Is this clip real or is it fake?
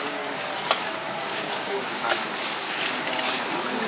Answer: fake